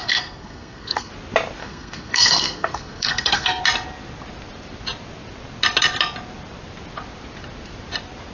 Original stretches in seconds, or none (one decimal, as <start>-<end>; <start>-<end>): 1.1-1.6; 3.6-8.3